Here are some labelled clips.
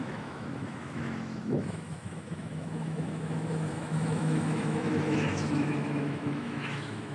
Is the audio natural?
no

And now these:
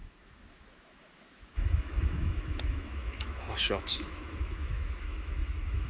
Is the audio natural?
no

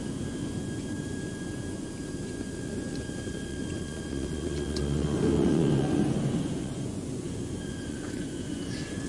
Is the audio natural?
no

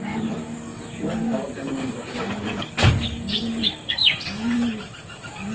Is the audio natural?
no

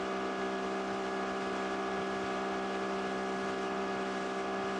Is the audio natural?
yes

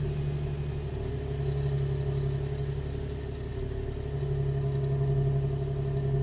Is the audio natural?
yes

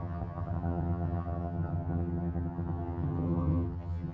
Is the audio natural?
no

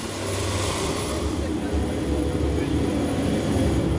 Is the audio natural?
yes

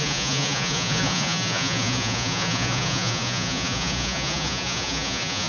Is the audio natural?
no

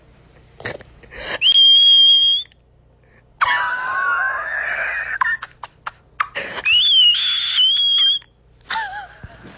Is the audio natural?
yes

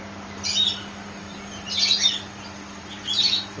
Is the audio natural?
yes